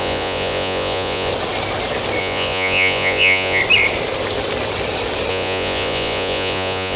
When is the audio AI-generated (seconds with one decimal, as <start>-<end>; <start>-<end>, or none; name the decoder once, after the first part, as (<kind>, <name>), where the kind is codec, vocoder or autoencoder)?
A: 0.0-1.3 (vocoder, Vocos); 2.2-3.6; 5.3-7.0